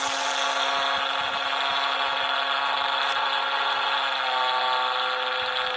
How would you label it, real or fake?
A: real